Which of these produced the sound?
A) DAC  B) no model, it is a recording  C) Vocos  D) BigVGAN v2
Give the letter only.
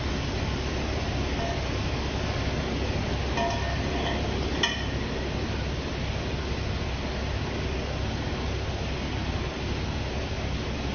B